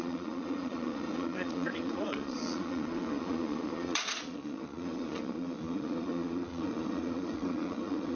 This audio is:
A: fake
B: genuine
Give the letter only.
A